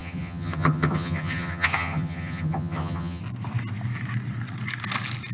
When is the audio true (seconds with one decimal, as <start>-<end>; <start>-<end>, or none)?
3.2-5.3